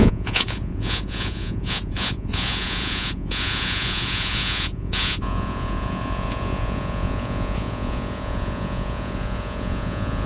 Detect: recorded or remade remade